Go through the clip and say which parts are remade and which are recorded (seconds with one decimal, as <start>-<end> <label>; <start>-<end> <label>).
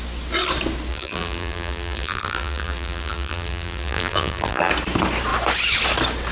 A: 0.0-0.9 recorded; 0.9-4.7 remade; 4.7-6.3 recorded